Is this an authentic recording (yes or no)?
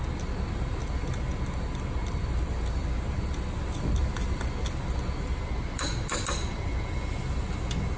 yes